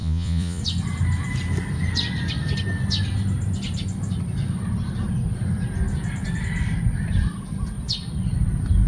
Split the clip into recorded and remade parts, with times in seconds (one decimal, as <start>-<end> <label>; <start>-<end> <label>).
0.0-0.6 remade; 0.6-8.9 recorded

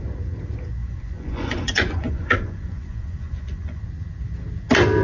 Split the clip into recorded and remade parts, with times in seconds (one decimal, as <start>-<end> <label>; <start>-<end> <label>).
0.0-0.8 recorded; 0.8-3.8 remade; 3.8-5.0 recorded

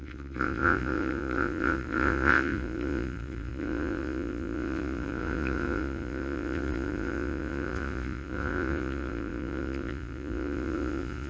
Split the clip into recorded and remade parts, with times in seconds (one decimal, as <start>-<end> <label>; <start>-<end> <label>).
0.0-11.3 remade

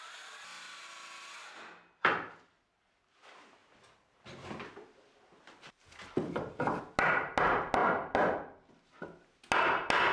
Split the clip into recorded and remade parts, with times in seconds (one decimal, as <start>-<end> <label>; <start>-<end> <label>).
0.0-10.1 recorded

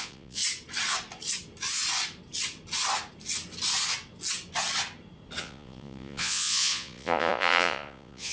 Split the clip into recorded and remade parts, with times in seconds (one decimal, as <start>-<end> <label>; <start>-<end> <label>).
0.0-0.4 remade; 0.4-5.4 recorded; 5.4-8.3 remade